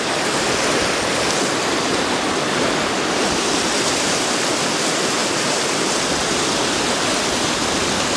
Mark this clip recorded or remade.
recorded